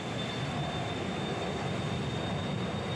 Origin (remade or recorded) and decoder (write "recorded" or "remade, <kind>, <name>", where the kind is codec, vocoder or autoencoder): recorded